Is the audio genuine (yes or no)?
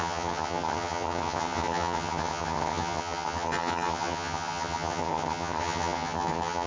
no